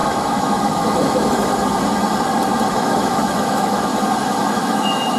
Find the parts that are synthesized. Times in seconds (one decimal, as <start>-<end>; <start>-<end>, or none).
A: 0.0-1.5; 2.7-3.9; 4.5-5.2